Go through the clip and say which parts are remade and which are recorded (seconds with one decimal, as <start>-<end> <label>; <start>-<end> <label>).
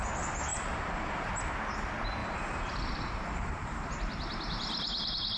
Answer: 0.0-0.5 recorded; 0.5-1.3 remade; 1.3-2.2 recorded; 2.2-3.9 remade; 3.9-5.4 recorded